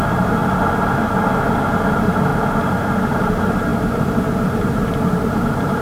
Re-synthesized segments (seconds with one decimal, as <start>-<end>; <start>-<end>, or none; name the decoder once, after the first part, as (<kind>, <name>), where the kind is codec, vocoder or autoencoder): 0.0-0.4 (vocoder, BigVGAN v2); 1.9-2.3; 3.1-5.8